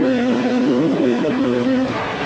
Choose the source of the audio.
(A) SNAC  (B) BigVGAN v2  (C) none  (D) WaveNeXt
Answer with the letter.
A